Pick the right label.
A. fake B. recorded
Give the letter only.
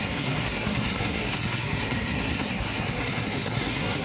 A